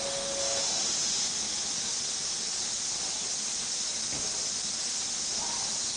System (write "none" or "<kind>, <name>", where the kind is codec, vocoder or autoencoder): none